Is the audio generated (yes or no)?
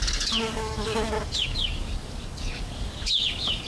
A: yes